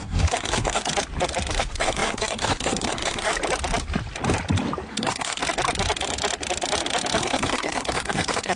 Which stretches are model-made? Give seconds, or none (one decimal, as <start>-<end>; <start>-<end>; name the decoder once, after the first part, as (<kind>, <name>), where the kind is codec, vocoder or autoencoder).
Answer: 0.0-0.9 (codec, SNAC); 1.6-3.3; 4.9-5.4; 7.2-8.6